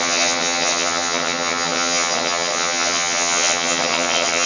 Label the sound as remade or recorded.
remade